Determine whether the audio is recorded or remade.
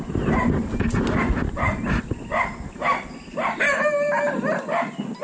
recorded